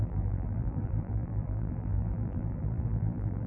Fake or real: fake